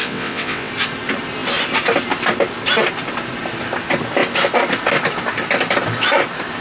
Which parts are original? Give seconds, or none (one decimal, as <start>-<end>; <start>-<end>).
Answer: 0.7-6.6